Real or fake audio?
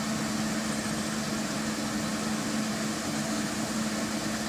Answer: real